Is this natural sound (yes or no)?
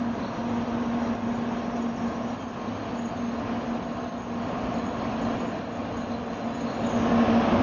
yes